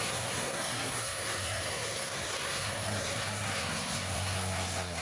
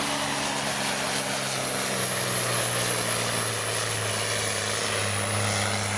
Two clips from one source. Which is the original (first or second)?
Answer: second